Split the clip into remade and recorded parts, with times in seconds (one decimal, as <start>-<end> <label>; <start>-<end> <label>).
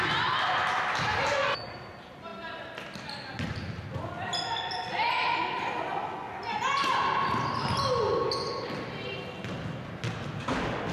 0.0-10.9 recorded